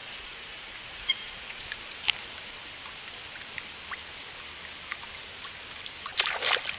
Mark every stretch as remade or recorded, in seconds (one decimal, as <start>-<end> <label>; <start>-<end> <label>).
0.0-1.6 remade; 1.6-6.8 recorded